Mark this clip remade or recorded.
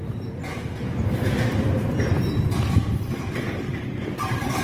remade